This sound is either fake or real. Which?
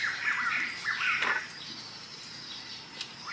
real